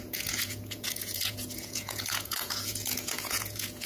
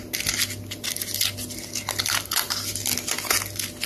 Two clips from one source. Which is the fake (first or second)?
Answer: first